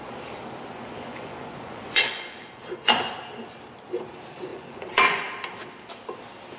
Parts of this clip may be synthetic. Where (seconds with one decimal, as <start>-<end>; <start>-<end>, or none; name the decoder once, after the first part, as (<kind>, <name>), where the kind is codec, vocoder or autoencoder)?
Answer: 0.7-3.0 (vocoder, Vocos); 4.5-5.2